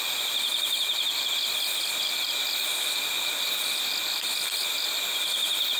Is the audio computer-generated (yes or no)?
yes